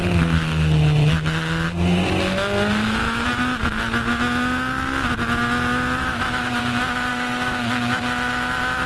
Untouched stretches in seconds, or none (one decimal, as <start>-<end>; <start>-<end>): 0.0-3.0; 3.8-6.0; 6.6-7.1; 8.0-8.9